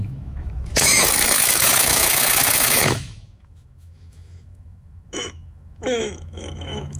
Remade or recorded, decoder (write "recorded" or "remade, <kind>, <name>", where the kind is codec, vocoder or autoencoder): remade, autoencoder, DAC-VAE